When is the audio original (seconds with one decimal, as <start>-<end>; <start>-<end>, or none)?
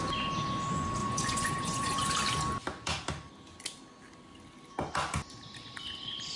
0.0-1.0; 2.1-6.4